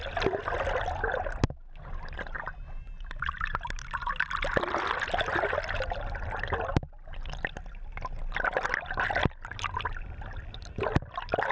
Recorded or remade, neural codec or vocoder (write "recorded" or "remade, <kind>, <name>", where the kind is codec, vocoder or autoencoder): recorded